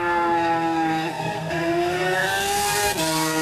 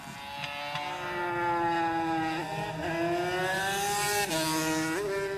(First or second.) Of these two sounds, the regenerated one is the first